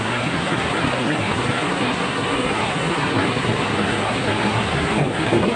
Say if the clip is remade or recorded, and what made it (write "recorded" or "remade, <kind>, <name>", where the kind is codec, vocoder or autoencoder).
remade, codec, SNAC